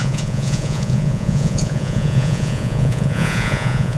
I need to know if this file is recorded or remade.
remade